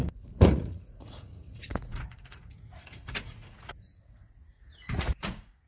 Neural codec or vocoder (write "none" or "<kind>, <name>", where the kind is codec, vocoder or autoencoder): vocoder, Vocos